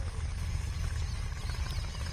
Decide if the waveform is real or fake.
real